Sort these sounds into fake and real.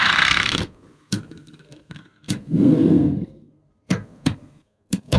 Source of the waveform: fake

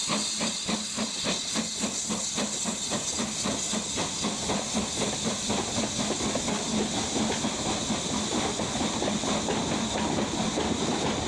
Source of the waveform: real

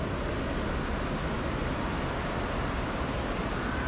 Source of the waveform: real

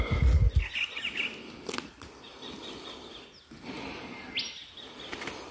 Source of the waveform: real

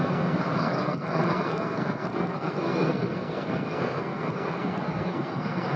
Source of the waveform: fake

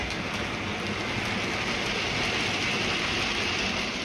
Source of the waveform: real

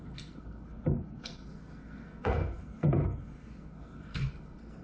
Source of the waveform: fake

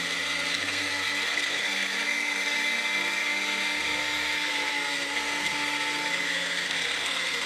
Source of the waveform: fake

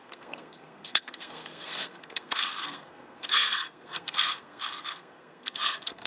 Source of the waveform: fake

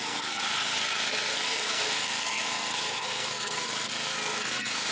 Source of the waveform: fake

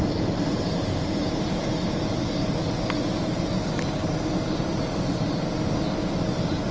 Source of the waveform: real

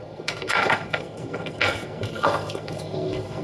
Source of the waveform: fake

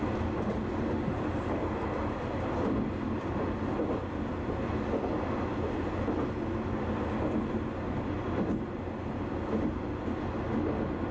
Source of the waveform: real